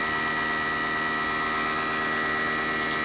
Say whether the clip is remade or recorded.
recorded